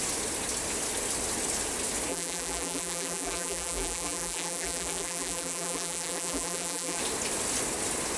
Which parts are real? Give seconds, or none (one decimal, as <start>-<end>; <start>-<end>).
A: 0.0-2.1; 7.0-8.2